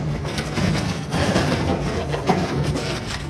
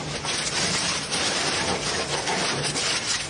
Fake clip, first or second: first